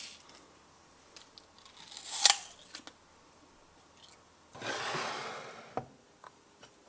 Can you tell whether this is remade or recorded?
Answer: recorded